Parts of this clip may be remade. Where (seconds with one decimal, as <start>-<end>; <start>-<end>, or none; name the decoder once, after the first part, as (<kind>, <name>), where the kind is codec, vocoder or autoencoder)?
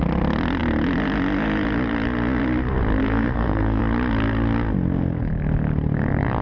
3.0-3.8 (codec, SNAC)